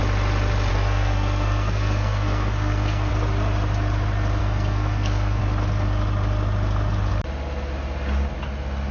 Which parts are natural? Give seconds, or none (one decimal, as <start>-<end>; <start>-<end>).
0.0-0.7; 3.1-4.4; 5.4-8.9